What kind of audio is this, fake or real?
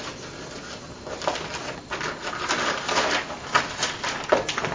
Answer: real